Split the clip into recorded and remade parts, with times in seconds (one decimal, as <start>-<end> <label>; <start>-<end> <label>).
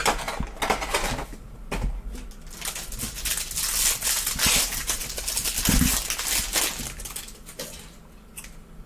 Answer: 0.0-8.9 recorded